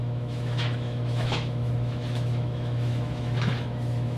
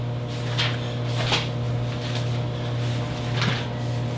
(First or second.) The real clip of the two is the second